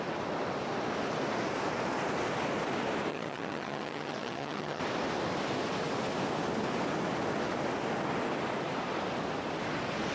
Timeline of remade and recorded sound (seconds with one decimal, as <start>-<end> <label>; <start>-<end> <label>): 0.0-3.1 recorded; 3.1-4.8 remade; 4.8-10.1 recorded